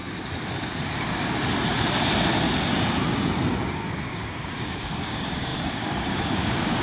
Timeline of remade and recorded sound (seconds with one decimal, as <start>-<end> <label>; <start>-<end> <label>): 0.0-3.6 recorded; 3.6-6.8 remade

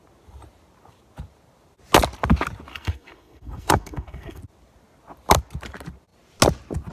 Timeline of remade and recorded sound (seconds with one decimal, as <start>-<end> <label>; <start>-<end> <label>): 0.0-2.7 recorded; 2.7-4.4 remade; 4.4-6.9 recorded

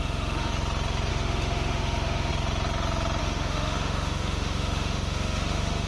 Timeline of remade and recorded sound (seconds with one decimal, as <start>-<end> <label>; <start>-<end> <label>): 0.0-0.5 remade; 0.5-1.1 recorded; 1.1-2.3 remade; 2.3-3.2 recorded; 3.2-5.9 remade

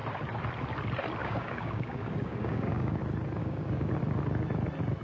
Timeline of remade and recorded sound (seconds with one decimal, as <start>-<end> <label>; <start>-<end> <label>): 0.0-1.2 recorded; 1.2-3.0 remade; 3.0-3.4 recorded; 3.4-3.9 remade; 3.9-5.0 recorded

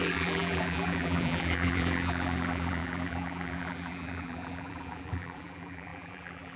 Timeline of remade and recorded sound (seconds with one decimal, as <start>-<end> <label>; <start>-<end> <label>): 0.0-6.6 remade

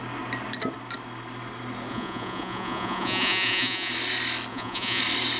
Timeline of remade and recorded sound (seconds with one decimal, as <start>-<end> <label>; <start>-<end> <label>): 0.0-1.9 recorded; 1.9-3.9 remade; 3.9-4.5 recorded; 4.5-5.0 remade; 5.0-5.4 recorded

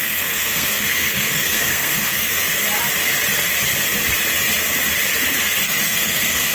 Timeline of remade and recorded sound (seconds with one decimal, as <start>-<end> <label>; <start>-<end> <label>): 0.0-2.5 remade; 2.5-5.6 recorded; 5.6-6.5 remade